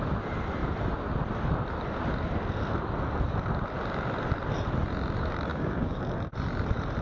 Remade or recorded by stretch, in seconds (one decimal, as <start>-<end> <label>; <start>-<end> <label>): 0.0-5.5 recorded; 5.5-6.0 remade; 6.0-7.0 recorded